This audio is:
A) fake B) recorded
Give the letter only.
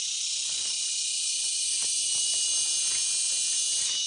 B